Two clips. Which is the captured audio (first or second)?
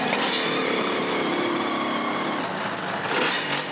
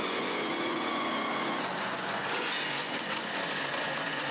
first